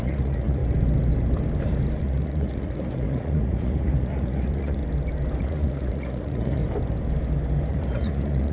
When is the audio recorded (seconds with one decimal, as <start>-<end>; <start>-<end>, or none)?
0.6-2.0; 4.8-5.4; 6.6-7.7